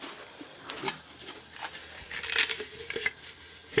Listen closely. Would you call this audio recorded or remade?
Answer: recorded